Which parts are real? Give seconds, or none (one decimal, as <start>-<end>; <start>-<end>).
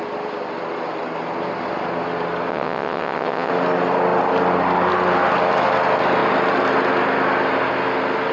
0.0-2.5; 3.5-8.3